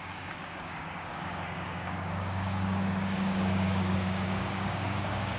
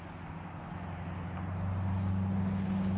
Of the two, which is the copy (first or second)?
first